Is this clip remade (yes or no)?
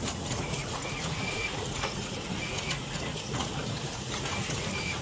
yes